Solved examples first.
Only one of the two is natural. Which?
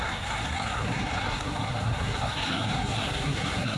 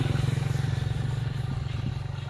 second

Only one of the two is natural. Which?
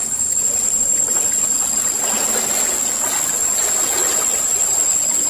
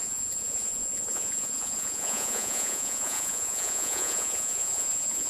first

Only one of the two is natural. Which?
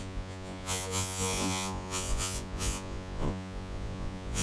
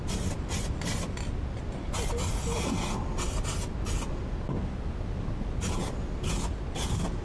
second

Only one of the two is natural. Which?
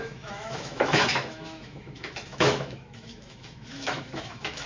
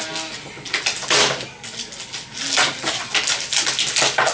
second